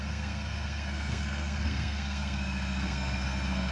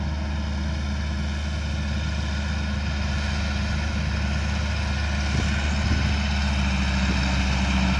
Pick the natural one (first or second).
second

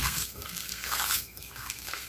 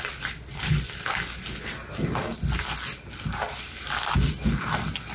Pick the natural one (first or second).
second